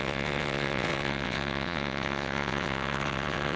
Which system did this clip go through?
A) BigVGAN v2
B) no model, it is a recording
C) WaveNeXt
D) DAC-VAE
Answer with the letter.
C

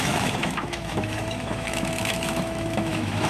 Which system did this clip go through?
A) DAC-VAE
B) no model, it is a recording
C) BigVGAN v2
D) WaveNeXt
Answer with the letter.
A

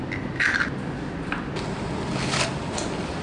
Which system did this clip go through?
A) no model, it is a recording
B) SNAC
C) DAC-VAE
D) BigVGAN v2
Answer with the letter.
A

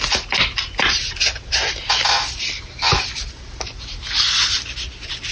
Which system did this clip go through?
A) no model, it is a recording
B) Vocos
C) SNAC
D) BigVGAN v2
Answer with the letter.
A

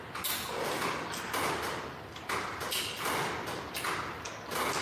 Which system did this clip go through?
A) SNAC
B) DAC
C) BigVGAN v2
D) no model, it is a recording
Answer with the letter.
D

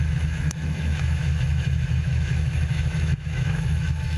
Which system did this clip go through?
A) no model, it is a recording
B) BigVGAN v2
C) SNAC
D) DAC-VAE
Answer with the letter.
D